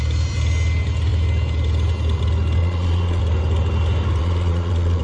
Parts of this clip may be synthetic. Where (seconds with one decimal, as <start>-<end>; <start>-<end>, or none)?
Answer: 2.6-3.2; 4.2-5.0